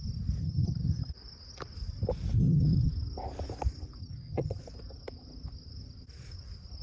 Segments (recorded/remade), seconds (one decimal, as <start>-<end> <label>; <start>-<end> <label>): 0.0-0.4 recorded; 0.4-1.1 remade; 1.1-2.4 recorded; 2.4-2.9 remade; 2.9-4.0 recorded; 4.0-4.6 remade; 4.6-6.8 recorded